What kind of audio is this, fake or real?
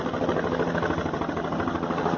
real